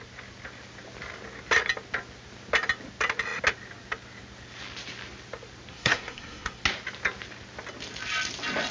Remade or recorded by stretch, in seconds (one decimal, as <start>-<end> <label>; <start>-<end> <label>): 0.0-5.7 recorded; 5.7-6.6 remade; 6.6-8.7 recorded